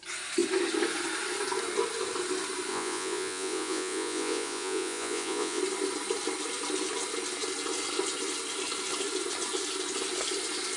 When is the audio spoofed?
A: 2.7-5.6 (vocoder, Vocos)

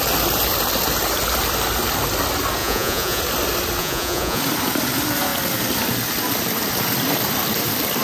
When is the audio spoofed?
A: 2.6-3.2 (vocoder, Vocos); 3.8-4.4

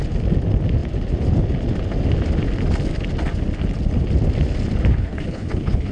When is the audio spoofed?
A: 4.9-5.9 (codec, HILCodec)

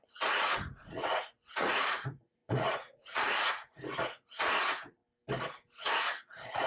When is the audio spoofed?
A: 0.0-5.0 (vocoder, Vocos); 6.2-6.7

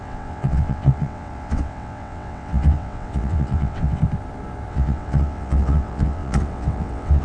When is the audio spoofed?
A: 0.0-4.0 (vocoder, WaveNeXt); 4.7-7.2